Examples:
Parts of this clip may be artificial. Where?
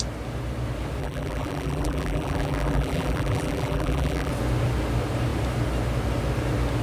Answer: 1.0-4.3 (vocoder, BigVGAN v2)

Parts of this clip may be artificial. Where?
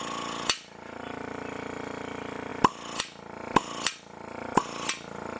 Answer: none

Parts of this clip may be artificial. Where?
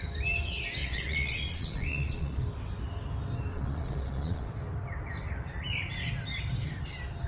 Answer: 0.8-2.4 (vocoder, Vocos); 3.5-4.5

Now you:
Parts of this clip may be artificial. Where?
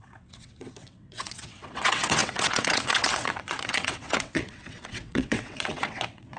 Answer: 0.0-6.4 (vocoder, WaveNeXt)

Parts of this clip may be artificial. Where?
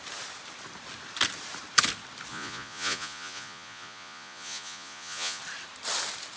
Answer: 2.3-5.4 (vocoder, Vocos)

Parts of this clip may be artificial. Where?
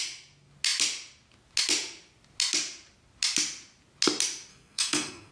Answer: 4.5-5.3 (codec, SNAC)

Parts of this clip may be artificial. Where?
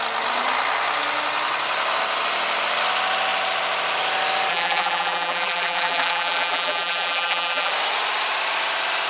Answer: 4.5-7.7 (vocoder, BigVGAN v2)